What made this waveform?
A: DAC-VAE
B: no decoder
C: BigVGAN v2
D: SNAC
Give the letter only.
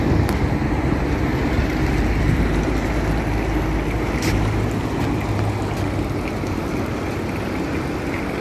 B